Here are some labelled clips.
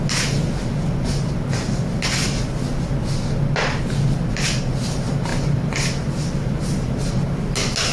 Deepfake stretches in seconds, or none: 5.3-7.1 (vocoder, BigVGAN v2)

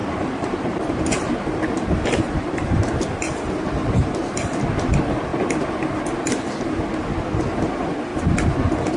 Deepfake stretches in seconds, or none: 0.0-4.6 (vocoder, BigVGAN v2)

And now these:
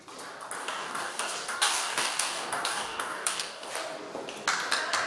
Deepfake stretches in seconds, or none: 0.6-3.7 (codec, DAC)